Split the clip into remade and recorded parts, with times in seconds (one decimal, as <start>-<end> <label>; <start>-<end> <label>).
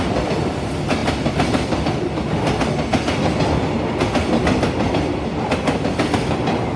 0.0-6.8 recorded